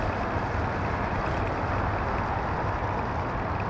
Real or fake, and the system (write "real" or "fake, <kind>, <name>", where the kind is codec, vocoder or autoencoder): real